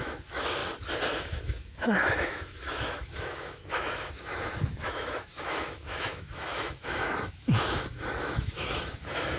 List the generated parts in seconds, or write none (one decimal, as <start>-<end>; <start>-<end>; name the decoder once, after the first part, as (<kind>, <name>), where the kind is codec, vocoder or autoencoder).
0.0-0.6 (autoencoder, DAC-VAE); 1.2-9.4